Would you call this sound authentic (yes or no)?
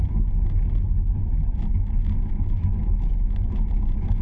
yes